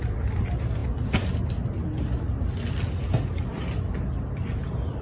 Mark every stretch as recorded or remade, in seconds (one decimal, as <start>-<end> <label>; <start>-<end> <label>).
0.0-5.0 recorded